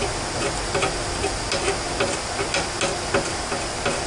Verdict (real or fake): real